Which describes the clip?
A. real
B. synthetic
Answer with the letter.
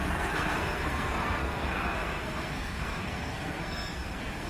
B